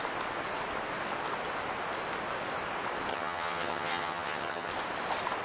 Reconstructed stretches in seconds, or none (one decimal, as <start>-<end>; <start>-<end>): 3.1-4.7

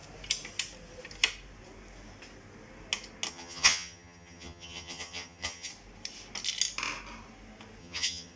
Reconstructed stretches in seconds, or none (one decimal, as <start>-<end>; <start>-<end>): 3.3-5.7; 7.8-8.4

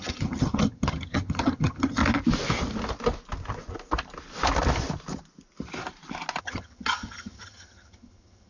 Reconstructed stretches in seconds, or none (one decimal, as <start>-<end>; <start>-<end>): 0.0-2.0; 6.4-8.5

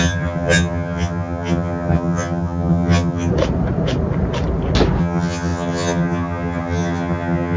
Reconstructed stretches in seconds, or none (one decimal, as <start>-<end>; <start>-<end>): 0.0-3.3; 5.0-7.6

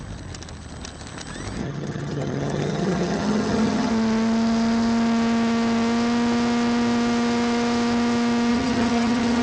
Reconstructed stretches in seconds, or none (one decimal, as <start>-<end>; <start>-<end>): 1.6-3.9; 8.5-9.4

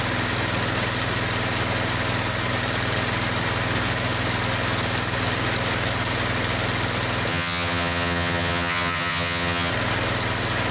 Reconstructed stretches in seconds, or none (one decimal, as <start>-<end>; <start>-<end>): 7.3-9.7

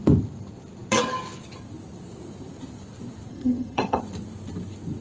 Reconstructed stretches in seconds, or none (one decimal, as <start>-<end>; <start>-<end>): 3.3-4.0

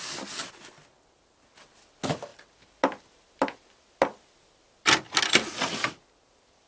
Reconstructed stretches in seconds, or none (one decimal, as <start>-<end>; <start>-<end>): none